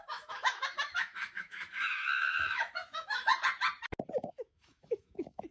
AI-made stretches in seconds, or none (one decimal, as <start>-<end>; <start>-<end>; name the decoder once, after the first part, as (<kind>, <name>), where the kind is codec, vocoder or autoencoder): 0.0-3.3 (autoencoder, DAC-VAE); 4.1-5.5